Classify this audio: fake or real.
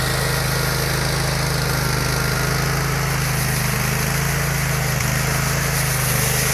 real